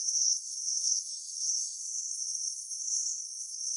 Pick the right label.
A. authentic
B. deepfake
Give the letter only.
B